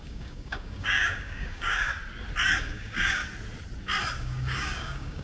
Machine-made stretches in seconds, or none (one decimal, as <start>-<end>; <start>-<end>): 0.0-1.9; 2.5-3.2; 4.2-5.2